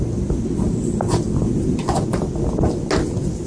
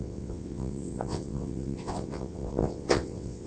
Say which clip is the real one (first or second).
first